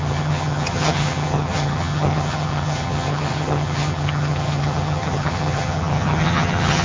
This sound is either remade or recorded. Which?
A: remade